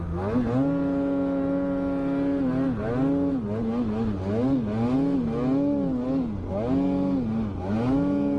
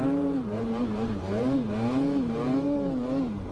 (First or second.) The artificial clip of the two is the second